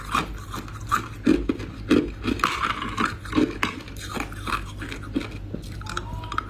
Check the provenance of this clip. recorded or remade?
recorded